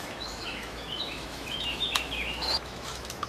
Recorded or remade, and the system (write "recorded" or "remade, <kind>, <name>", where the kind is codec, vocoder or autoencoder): remade, autoencoder, DAC-VAE